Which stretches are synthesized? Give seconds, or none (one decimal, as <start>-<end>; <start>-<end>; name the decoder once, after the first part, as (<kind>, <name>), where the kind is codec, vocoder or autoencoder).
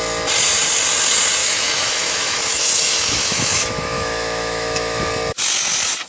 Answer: 1.4-5.1 (autoencoder, DAC-VAE)